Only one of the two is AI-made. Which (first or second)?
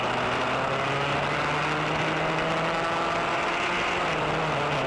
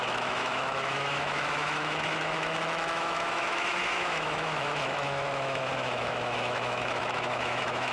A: second